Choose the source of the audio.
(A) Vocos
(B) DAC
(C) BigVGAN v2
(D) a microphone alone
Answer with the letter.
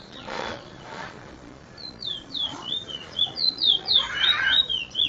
A